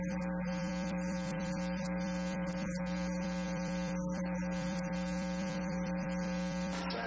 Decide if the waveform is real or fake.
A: fake